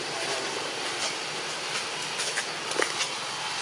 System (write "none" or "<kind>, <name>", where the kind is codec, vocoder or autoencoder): none